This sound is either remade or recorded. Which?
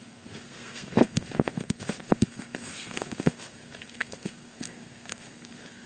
remade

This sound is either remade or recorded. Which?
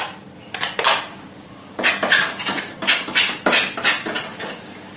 recorded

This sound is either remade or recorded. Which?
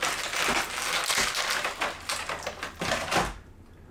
recorded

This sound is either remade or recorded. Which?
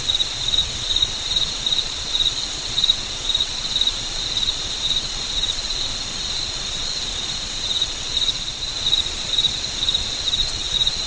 remade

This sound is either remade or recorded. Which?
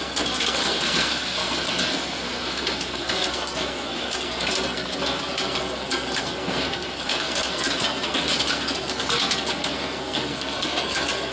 remade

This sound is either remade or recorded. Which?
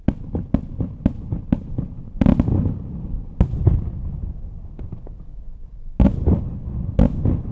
recorded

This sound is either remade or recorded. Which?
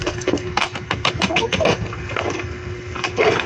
remade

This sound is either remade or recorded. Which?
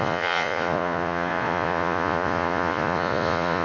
remade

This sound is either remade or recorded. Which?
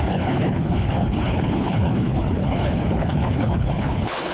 remade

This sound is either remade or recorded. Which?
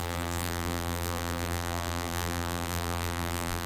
remade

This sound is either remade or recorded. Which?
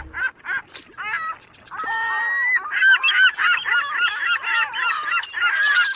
recorded